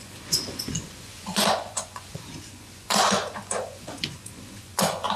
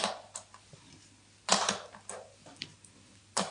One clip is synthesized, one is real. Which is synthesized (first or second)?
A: first